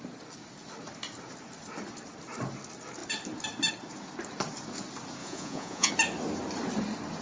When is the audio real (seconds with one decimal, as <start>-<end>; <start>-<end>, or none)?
0.0-5.2; 5.9-7.2